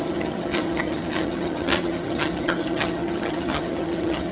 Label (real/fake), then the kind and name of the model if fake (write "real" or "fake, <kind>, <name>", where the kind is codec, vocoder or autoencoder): fake, vocoder, HiFi-GAN